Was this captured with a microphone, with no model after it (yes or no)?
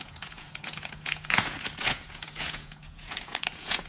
no